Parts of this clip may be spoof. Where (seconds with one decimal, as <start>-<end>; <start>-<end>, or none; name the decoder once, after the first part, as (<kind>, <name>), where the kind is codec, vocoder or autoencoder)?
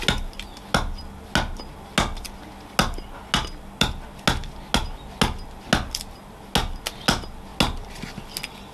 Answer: none